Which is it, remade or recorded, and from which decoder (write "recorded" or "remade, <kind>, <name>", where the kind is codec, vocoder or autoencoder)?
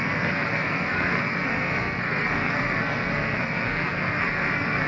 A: remade, codec, SNAC